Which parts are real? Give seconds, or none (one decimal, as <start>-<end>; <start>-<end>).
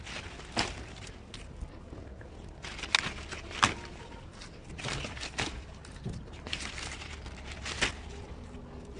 0.0-3.9; 6.7-9.0